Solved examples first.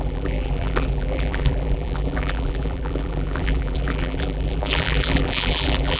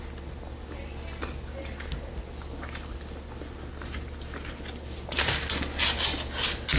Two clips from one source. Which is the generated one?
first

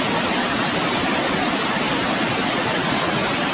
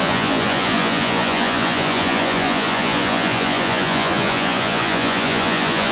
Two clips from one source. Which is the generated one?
second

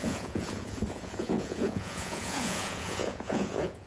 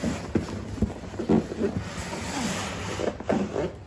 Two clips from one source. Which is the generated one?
first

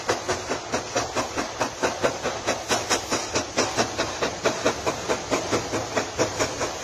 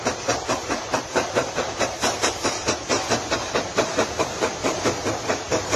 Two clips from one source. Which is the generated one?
second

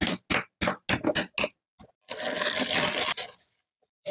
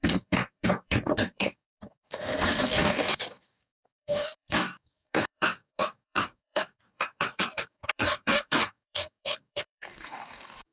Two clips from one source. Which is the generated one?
second